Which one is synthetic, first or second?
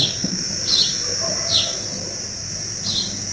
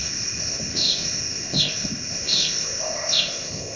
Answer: second